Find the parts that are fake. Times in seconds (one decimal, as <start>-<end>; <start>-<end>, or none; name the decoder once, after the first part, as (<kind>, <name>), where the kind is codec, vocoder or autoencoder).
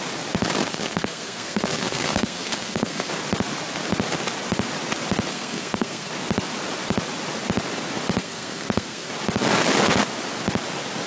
0.7-3.1 (codec, SNAC); 5.3-6.1; 8.2-9.1